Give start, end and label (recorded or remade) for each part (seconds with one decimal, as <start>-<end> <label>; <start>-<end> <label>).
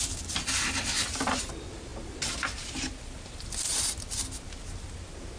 0.0-5.4 recorded